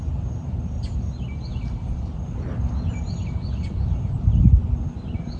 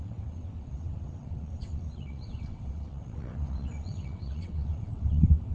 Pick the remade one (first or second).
second